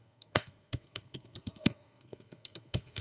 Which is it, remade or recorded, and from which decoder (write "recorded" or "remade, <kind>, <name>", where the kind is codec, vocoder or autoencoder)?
remade, codec, SNAC